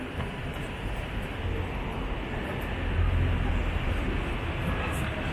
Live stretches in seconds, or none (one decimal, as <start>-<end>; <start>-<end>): 0.0-5.3